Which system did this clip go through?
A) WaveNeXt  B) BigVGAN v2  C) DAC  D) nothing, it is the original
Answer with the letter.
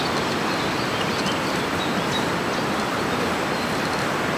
B